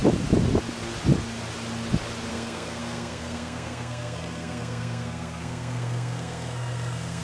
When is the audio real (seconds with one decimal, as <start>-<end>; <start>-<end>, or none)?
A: 0.0-2.3